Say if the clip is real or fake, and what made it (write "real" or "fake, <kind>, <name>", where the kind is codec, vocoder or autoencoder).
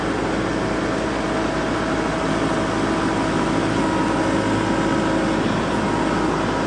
real